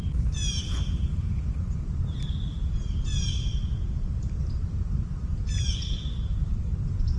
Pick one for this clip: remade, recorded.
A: recorded